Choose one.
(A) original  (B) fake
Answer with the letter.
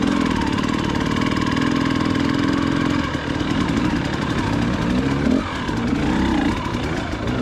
A